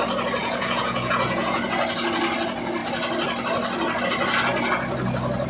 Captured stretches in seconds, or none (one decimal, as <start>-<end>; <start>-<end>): 0.0-0.4; 1.6-5.5